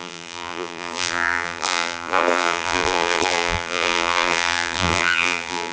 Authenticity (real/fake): fake